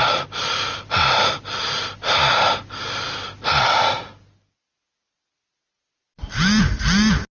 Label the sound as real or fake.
real